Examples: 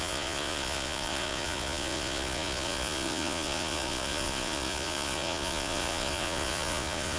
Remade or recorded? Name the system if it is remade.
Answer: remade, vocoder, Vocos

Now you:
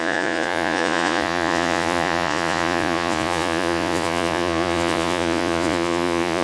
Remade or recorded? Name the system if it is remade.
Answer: remade, vocoder, Vocos